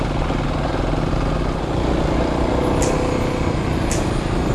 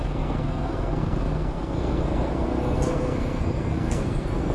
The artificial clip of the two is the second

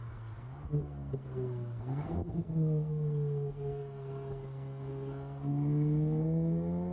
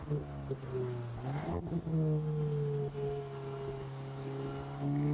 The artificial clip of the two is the first